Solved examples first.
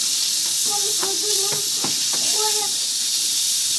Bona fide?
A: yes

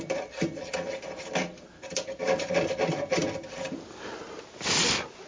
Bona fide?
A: no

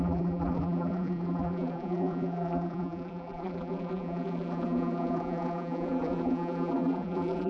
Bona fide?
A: no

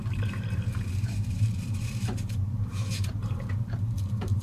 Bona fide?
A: no